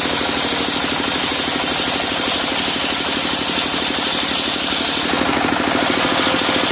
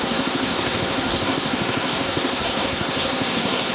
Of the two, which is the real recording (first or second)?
first